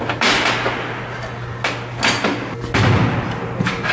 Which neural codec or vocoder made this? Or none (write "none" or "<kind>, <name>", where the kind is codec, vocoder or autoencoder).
none